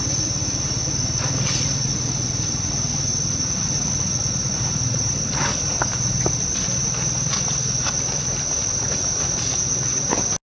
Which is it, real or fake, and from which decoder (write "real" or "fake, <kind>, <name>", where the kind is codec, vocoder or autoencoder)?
real